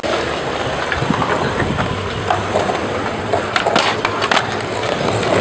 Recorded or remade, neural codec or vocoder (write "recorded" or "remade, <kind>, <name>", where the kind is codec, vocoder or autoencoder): recorded